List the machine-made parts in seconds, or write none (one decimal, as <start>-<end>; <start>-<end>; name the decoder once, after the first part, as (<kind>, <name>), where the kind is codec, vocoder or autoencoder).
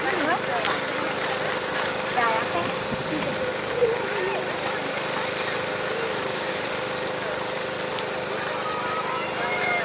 0.0-9.8 (vocoder, BigVGAN v2)